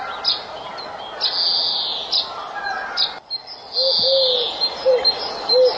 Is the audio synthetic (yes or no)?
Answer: no